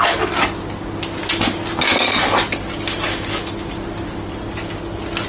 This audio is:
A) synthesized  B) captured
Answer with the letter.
B